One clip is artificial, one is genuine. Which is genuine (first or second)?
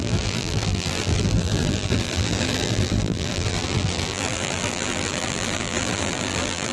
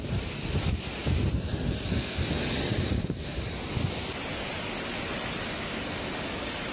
second